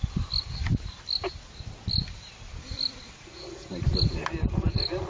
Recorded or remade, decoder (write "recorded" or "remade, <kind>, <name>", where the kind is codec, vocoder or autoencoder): recorded